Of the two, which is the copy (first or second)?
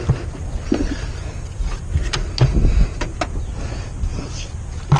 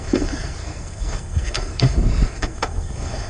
second